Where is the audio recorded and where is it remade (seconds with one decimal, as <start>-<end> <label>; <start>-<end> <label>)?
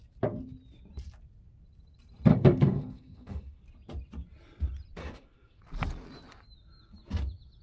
0.0-2.3 recorded; 2.3-3.6 remade; 3.6-5.0 recorded; 5.0-5.6 remade; 5.6-7.6 recorded